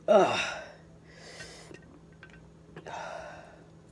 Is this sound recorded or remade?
recorded